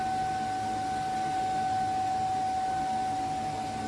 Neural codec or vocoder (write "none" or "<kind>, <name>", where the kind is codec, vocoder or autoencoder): none